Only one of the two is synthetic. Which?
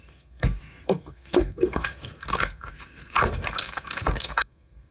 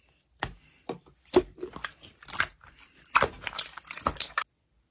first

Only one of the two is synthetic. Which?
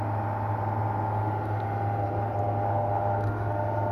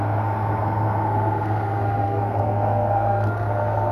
second